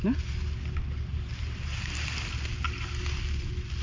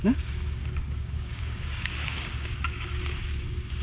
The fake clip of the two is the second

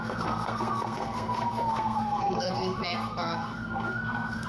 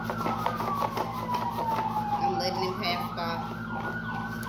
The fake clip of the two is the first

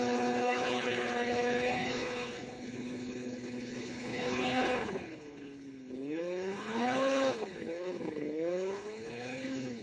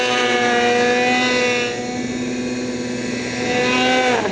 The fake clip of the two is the first